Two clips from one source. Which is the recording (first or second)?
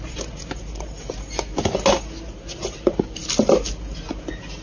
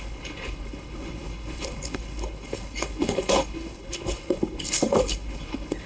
first